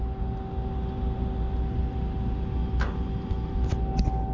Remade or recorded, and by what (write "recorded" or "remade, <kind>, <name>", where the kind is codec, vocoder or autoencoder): recorded